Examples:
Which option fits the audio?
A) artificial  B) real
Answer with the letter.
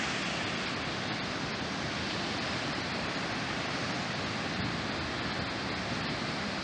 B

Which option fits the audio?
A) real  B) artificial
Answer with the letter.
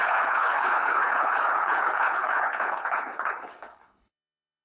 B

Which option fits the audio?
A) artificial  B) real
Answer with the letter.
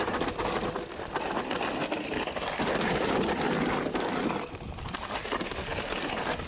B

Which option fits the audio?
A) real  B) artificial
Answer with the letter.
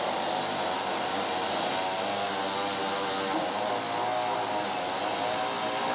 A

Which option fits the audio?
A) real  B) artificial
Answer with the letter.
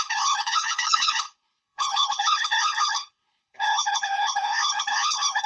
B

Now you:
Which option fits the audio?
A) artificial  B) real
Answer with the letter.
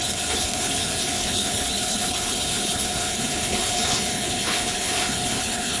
A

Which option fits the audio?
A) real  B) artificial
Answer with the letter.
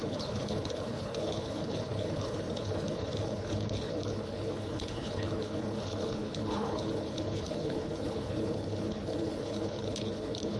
B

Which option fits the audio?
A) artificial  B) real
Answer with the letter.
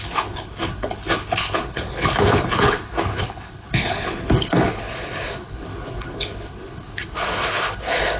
A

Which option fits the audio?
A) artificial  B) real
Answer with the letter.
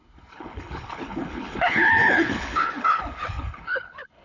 A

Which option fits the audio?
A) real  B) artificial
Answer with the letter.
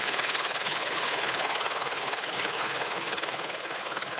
B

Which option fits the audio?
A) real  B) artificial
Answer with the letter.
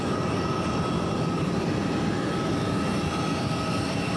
A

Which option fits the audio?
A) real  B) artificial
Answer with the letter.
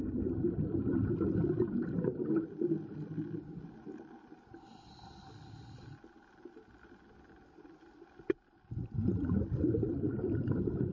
A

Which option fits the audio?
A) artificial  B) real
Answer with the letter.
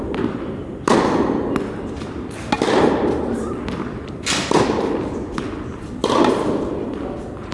B